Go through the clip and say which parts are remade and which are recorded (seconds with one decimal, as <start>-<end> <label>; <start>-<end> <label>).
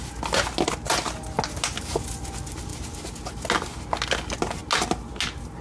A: 0.0-5.6 recorded